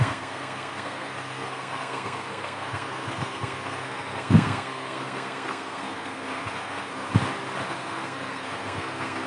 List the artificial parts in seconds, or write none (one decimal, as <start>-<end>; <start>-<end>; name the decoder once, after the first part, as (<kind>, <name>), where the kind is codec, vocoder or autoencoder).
0.0-7.1 (codec, SNAC); 7.7-9.3